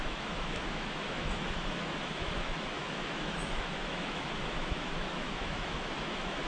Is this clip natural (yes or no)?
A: no